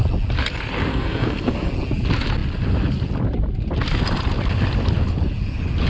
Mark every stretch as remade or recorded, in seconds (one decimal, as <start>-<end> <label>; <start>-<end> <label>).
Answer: 0.0-0.9 recorded; 0.9-1.7 remade; 1.7-5.9 recorded